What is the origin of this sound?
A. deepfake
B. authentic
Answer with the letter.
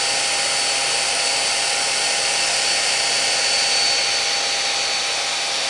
B